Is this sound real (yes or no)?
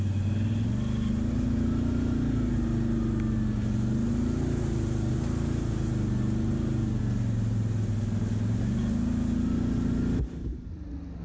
yes